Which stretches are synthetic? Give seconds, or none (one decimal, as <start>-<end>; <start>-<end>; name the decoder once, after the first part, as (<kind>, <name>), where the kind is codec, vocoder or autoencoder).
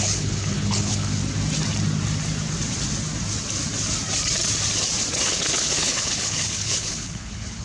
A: 0.0-1.2 (codec, HILCodec); 5.3-7.6